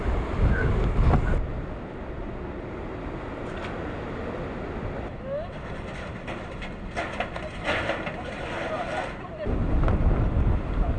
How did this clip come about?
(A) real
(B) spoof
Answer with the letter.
A